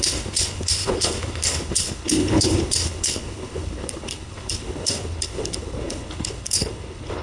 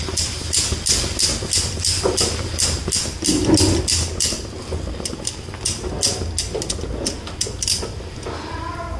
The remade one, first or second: first